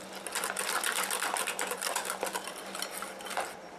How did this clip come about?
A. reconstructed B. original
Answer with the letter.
B